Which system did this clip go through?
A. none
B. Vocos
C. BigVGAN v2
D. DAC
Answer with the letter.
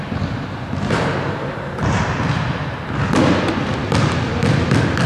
A